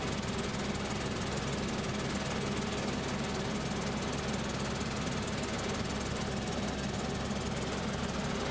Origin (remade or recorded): recorded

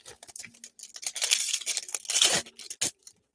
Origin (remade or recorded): recorded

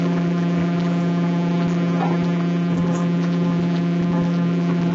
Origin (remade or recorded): remade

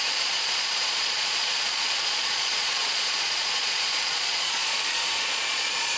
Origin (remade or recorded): remade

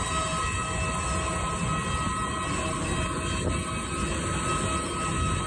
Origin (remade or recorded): recorded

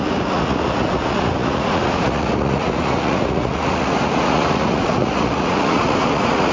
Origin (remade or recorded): remade